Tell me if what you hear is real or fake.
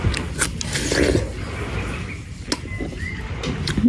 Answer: real